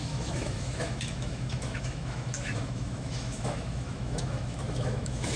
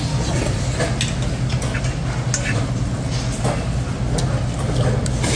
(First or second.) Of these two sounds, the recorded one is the second